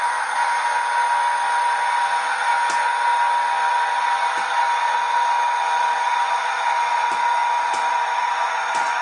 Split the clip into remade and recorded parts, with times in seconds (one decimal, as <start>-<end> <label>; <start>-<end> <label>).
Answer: 0.0-9.0 recorded